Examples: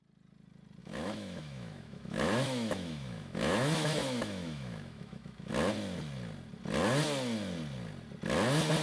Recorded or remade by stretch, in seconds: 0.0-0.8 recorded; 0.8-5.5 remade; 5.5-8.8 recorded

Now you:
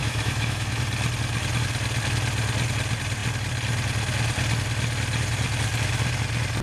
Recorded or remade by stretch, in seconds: 0.0-0.8 remade; 0.8-6.6 recorded

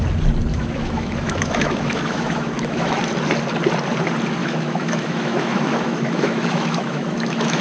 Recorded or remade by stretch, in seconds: 0.0-0.5 recorded; 0.5-3.0 remade; 3.0-4.4 recorded; 4.4-7.6 remade